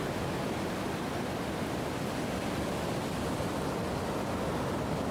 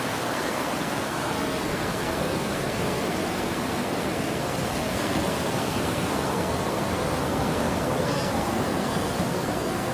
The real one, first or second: first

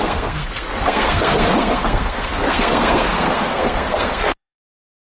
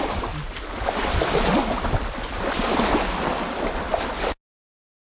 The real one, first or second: second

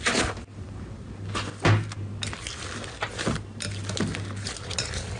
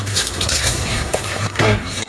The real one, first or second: first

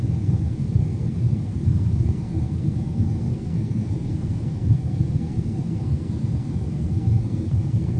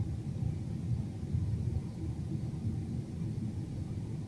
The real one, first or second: second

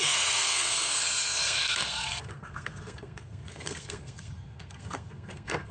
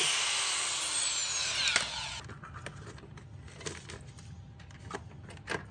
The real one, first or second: second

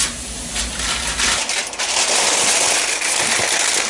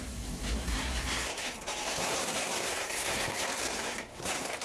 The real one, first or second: first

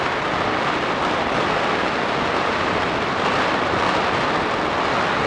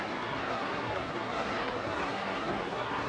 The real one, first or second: first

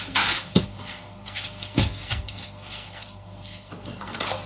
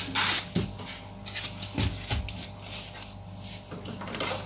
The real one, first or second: second